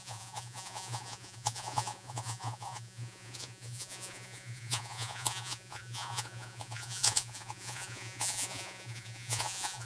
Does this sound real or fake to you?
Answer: fake